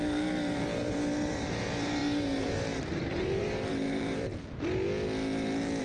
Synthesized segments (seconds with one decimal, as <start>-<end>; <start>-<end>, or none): 0.0-4.3

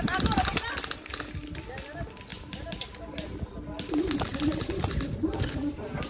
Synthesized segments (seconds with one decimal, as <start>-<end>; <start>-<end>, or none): 2.3-6.1

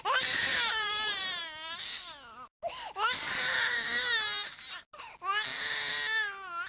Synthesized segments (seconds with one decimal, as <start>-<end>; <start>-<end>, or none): 0.5-1.4